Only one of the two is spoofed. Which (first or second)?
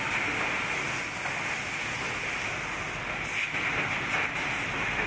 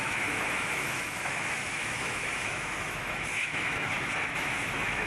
second